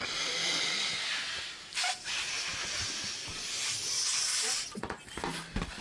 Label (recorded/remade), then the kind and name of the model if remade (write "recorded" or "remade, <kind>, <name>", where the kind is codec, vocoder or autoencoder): recorded